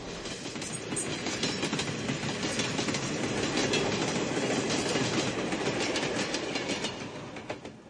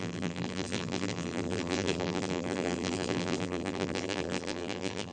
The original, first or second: first